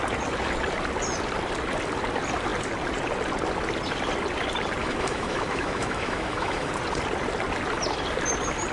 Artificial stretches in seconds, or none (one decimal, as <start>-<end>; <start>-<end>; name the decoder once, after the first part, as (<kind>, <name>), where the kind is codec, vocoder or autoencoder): 4.8-6.7 (autoencoder, DAC-VAE)